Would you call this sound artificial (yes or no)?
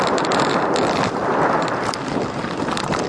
no